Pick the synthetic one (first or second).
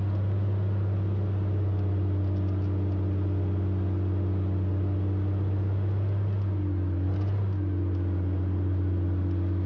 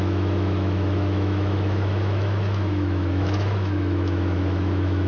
second